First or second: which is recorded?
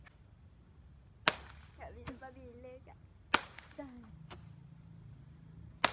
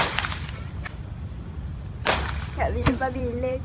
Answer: first